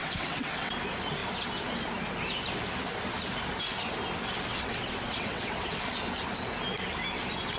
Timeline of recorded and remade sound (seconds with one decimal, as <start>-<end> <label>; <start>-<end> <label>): 0.0-0.7 remade; 0.7-4.5 recorded; 4.5-5.8 remade; 5.8-7.6 recorded